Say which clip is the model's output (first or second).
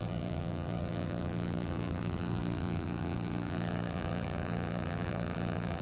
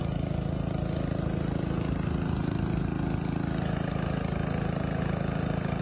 first